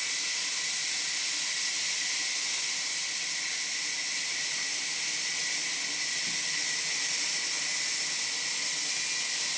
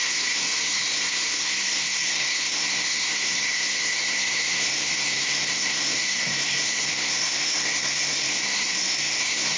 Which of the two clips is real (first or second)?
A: first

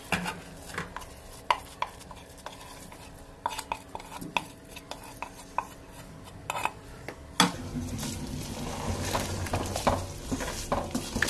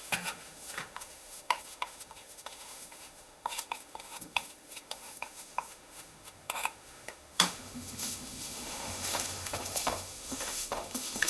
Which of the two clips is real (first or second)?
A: first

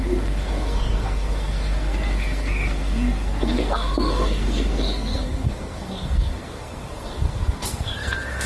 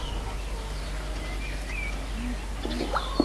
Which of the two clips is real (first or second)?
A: second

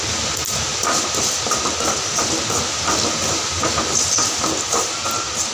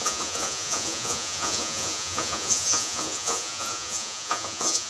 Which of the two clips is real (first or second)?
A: first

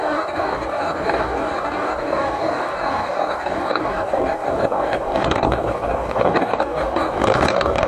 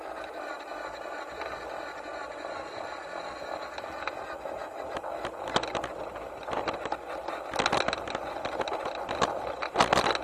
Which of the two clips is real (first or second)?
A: second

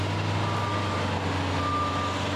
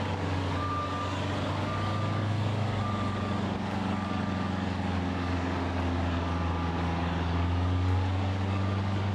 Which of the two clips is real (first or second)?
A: first